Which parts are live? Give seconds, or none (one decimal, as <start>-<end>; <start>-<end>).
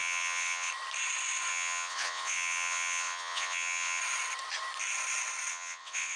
0.7-1.5; 4.0-5.5